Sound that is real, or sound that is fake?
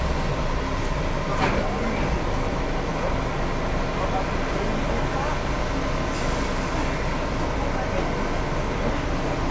real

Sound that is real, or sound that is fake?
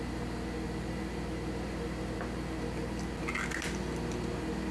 real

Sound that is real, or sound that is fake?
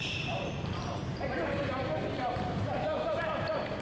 fake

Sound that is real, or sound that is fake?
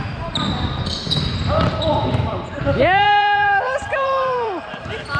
fake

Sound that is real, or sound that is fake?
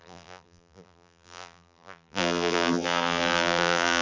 fake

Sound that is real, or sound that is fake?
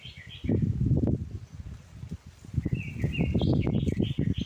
fake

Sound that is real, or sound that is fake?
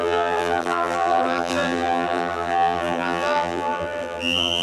fake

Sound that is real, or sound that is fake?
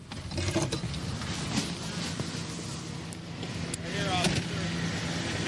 real